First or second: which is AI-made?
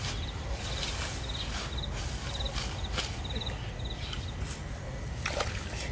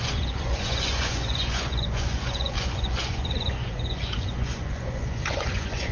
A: second